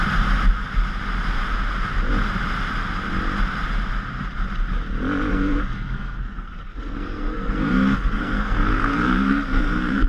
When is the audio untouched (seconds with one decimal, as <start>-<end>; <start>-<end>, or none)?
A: 0.0-5.3